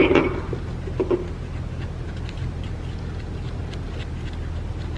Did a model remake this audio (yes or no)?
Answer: no